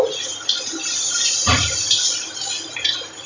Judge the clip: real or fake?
real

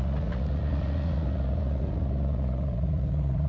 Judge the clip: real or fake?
fake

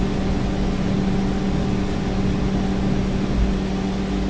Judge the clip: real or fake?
real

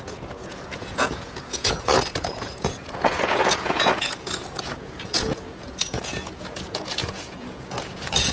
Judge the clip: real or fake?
fake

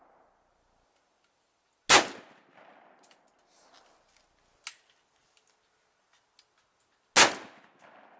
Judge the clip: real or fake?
real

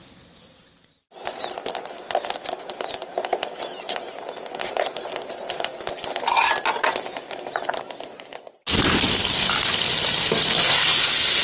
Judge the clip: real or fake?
real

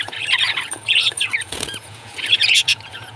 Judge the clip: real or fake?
fake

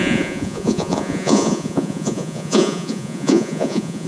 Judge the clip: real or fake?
fake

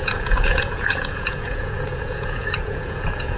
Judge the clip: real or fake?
fake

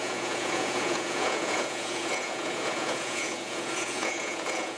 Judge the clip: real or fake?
fake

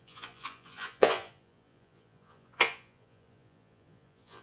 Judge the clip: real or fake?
fake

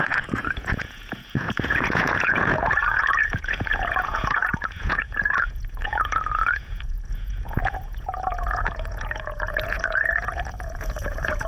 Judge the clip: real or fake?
fake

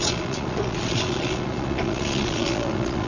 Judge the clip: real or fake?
fake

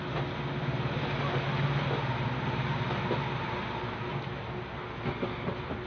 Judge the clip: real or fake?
real